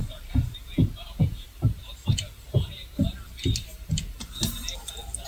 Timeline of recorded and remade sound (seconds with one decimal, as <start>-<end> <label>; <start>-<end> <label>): 0.0-3.2 remade; 3.2-5.3 recorded